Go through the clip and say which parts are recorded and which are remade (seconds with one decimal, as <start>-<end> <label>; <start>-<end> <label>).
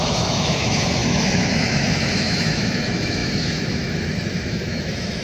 0.0-5.2 remade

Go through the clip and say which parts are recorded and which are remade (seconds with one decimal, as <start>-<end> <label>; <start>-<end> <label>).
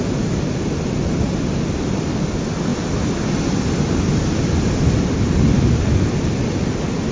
0.0-7.1 recorded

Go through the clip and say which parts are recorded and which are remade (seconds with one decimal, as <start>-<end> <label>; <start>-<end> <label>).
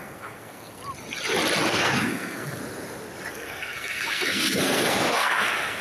0.0-0.8 remade; 0.8-1.7 recorded; 1.7-2.6 remade; 2.6-3.3 recorded; 3.3-5.8 remade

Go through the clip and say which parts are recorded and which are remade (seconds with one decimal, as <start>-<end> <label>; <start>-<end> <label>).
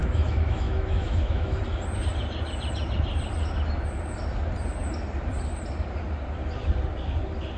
0.0-1.6 remade; 1.6-7.6 recorded